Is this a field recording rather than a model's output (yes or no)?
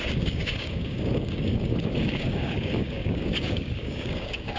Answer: no